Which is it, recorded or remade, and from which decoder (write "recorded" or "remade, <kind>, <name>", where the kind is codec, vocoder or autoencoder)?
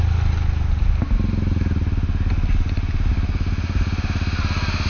recorded